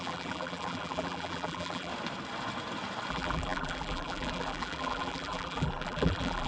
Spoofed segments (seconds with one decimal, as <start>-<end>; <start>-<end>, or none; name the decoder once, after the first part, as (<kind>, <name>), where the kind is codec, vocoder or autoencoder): 0.0-1.9 (vocoder, BigVGAN v2); 3.1-6.5